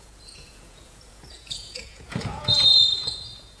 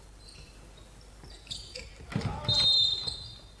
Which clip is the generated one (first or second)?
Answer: first